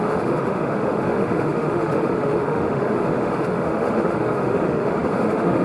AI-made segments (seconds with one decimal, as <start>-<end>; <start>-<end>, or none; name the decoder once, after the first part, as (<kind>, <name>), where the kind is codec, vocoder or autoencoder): 0.0-5.6 (autoencoder, DAC-VAE)